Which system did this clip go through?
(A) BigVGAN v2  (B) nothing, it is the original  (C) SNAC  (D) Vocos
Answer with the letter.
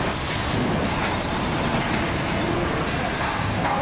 B